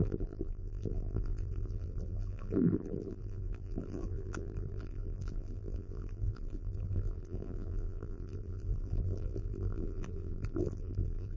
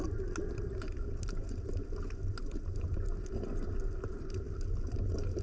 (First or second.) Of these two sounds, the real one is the second